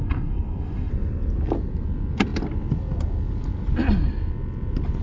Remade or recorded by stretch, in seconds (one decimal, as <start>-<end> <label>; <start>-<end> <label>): 0.0-0.9 remade; 0.9-5.0 recorded